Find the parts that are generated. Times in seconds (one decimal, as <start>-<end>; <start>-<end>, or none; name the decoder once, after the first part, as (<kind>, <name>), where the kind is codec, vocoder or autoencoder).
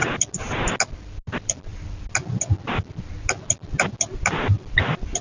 none